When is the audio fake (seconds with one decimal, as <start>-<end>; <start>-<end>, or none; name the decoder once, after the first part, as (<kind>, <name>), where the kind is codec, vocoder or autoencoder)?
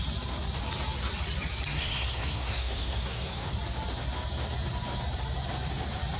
1.7-3.5 (codec, SNAC)